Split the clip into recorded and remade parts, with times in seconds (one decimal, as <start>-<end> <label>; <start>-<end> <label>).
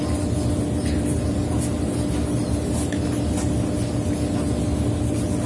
0.0-5.5 recorded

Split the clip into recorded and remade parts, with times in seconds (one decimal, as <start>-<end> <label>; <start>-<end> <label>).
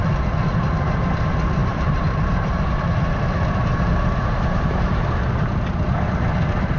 0.0-1.6 recorded; 1.6-2.8 remade; 2.8-3.7 recorded; 3.7-4.8 remade; 4.8-6.8 recorded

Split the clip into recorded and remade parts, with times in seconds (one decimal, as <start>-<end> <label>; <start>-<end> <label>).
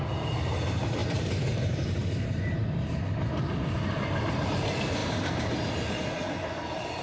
0.0-1.0 recorded; 1.0-2.9 remade; 2.9-7.0 recorded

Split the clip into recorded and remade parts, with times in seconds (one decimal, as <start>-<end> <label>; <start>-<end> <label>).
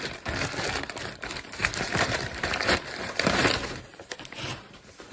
0.0-5.1 remade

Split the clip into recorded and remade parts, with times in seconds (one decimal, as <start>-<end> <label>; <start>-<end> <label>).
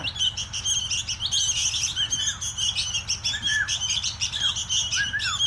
0.0-3.5 recorded; 3.5-4.5 remade; 4.5-5.5 recorded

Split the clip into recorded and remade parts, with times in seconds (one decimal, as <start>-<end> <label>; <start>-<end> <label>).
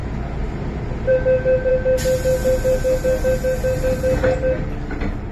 0.0-5.3 recorded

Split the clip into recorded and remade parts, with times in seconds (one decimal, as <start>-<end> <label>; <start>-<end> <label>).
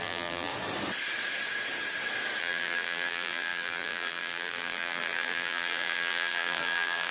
0.0-0.5 remade; 0.5-2.4 recorded; 2.4-7.1 remade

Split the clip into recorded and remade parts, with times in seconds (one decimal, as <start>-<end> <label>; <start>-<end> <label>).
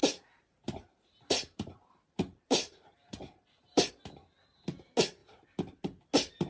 0.0-3.9 remade; 3.9-6.5 recorded